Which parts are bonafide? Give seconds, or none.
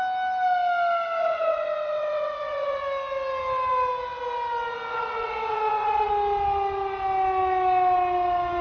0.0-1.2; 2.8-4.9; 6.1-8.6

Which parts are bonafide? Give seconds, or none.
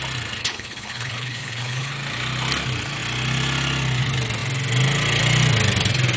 0.0-0.4; 1.9-6.2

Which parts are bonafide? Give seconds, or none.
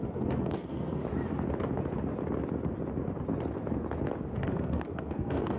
1.0-4.4